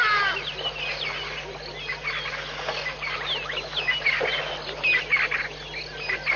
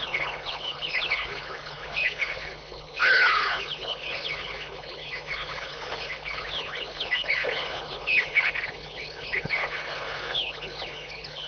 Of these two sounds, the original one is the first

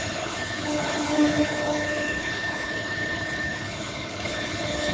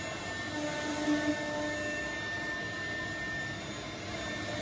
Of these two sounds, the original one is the second